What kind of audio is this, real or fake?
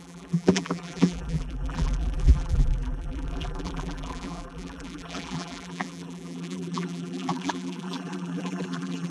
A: fake